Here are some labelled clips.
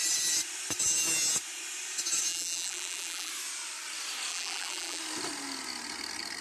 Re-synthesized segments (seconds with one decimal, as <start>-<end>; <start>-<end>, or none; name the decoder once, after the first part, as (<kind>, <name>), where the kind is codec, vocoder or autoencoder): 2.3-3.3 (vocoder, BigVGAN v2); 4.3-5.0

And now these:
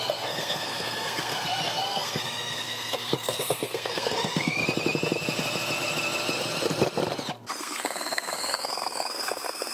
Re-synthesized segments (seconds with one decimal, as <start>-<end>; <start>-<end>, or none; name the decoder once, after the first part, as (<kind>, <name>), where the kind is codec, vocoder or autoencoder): 0.0-4.6 (codec, SNAC); 7.6-9.7

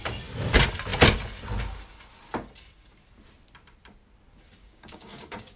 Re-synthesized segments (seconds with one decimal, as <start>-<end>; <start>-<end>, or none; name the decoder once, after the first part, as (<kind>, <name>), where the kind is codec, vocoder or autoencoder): 4.6-5.6 (codec, DAC)